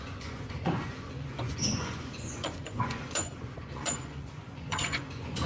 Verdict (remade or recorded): remade